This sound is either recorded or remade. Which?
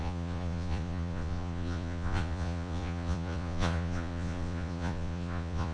remade